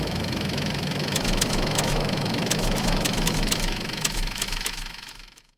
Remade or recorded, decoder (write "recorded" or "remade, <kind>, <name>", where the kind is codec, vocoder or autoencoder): remade, autoencoder, DAC-VAE